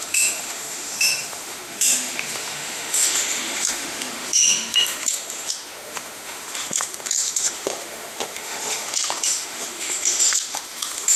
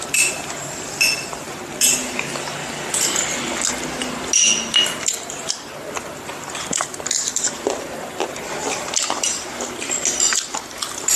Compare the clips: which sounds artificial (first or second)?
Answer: first